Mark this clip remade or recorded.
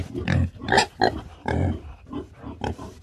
remade